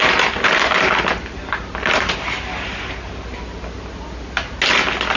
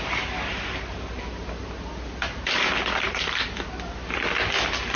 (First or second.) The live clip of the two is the first